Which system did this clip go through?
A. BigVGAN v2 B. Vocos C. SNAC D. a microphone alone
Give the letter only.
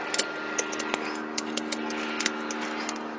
D